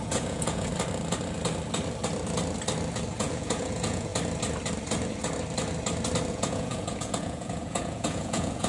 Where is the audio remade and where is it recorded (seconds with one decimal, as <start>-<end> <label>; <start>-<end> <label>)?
0.0-0.7 remade; 0.7-3.1 recorded; 3.1-4.1 remade; 4.1-6.3 recorded; 6.3-8.7 remade